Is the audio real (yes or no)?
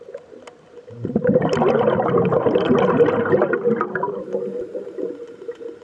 yes